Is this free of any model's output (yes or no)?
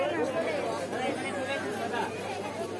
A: yes